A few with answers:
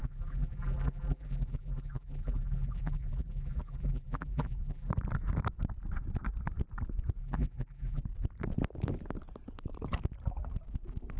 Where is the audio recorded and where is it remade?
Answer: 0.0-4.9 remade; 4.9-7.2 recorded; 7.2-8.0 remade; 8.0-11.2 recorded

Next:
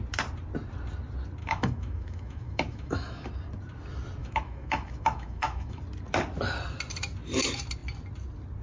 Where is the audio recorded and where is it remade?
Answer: 0.0-1.4 recorded; 1.4-3.3 remade; 3.3-4.2 recorded; 4.2-5.8 remade; 5.8-8.6 recorded

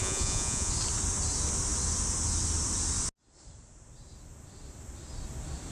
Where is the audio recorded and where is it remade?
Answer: 0.0-0.7 remade; 0.7-5.7 recorded

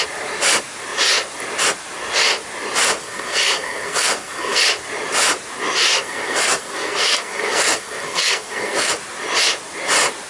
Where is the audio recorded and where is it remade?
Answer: 0.0-3.0 recorded; 3.0-4.6 remade; 4.6-5.9 recorded; 5.9-8.9 remade; 8.9-10.3 recorded

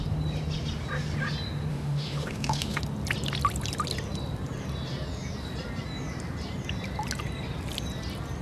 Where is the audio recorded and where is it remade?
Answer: 0.0-1.7 recorded; 1.7-2.8 remade; 2.8-8.4 recorded

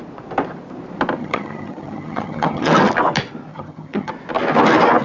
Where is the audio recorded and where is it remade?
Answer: 0.0-1.2 recorded; 1.2-2.7 remade; 2.7-3.5 recorded; 3.5-4.1 remade; 4.1-5.0 recorded

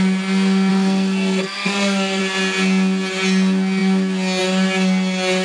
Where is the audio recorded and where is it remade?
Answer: 0.0-0.7 recorded; 0.7-2.2 remade; 2.2-5.4 recorded